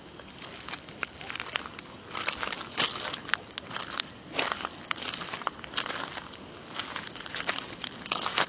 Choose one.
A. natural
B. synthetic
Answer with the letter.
A